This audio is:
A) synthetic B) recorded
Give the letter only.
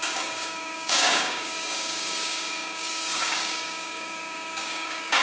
A